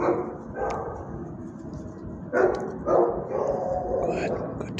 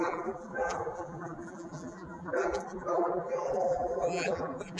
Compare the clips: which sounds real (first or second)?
first